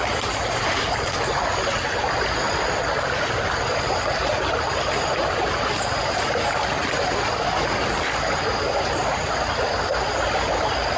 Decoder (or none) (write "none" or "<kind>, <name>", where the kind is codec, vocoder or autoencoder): none